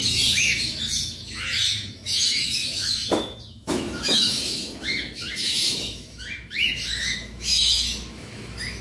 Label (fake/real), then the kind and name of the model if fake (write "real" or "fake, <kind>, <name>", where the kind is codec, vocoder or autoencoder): fake, autoencoder, DAC-VAE